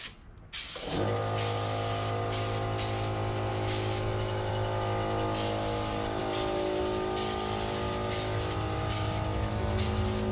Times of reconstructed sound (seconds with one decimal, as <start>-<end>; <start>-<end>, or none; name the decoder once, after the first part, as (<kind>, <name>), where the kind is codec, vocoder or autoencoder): 3.5-4.5 (autoencoder, DAC-VAE)